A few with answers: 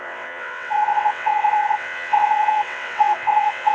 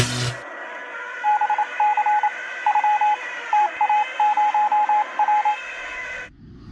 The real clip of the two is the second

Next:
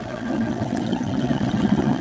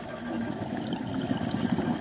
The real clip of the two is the second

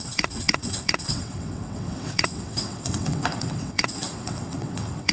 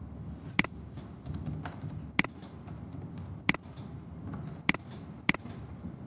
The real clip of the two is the second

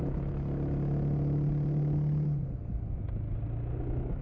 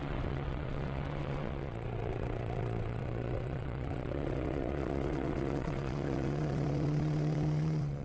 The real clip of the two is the first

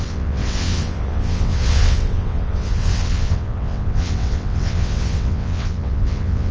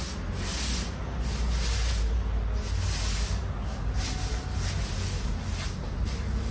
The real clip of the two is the second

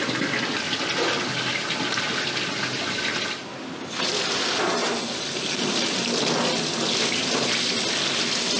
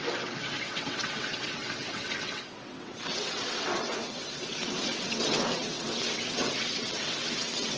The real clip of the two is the first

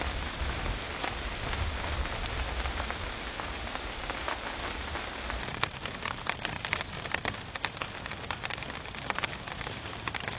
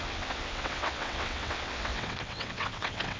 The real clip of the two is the first